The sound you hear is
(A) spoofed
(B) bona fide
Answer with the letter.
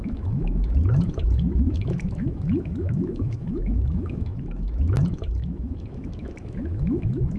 A